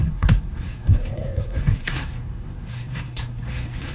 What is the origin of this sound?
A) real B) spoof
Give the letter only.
B